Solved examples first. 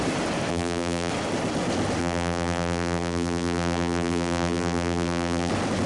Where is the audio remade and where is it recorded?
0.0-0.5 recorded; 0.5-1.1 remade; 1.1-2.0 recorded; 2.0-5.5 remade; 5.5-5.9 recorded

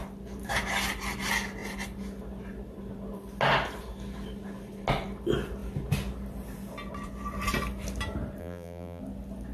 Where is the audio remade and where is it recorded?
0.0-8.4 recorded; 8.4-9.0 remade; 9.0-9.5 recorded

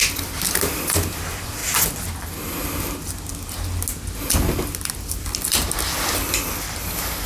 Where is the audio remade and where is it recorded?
0.0-1.6 remade; 1.6-4.2 recorded; 4.2-7.3 remade

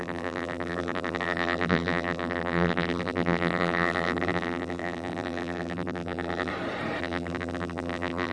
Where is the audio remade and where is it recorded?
0.0-6.5 remade; 6.5-7.0 recorded; 7.0-8.3 remade

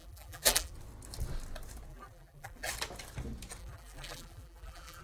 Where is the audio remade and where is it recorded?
0.0-0.7 remade; 0.7-1.9 recorded; 1.9-2.7 remade; 2.7-3.6 recorded; 3.6-5.0 remade

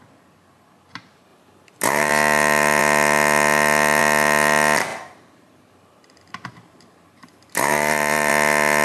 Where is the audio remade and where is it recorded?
0.0-1.3 recorded; 1.3-2.1 remade; 2.1-4.9 recorded; 4.9-8.3 remade; 8.3-8.8 recorded